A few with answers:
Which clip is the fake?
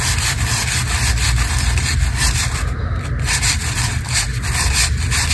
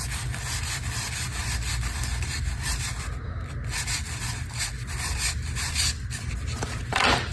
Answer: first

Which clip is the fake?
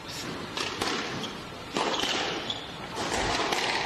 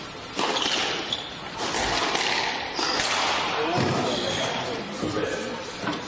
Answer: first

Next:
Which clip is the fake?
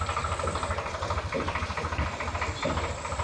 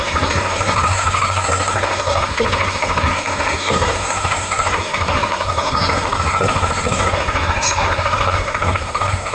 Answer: second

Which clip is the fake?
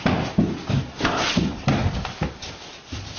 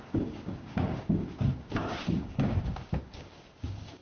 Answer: second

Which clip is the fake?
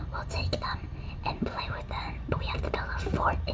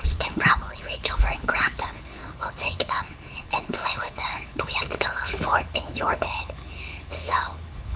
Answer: second